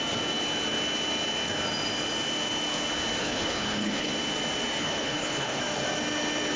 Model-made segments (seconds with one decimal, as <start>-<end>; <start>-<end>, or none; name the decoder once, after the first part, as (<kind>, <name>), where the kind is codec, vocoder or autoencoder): 3.2-4.1 (codec, HILCodec); 4.8-5.6